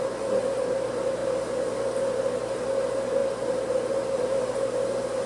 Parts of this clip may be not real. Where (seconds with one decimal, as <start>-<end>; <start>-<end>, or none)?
none